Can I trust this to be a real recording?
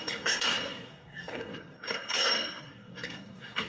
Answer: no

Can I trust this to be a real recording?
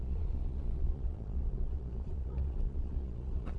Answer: no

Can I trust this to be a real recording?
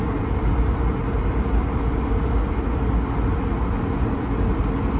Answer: yes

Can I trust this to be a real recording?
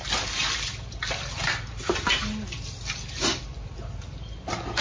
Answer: yes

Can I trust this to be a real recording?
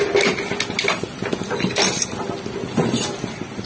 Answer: yes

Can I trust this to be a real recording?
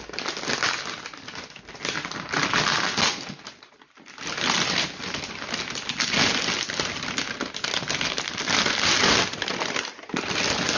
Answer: yes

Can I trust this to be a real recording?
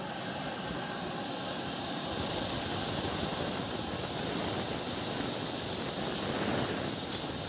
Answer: yes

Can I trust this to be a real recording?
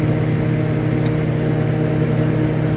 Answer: yes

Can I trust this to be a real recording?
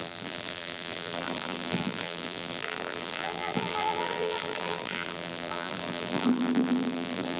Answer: no